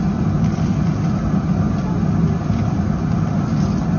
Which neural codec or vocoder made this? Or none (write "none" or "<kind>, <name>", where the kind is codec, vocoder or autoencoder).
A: none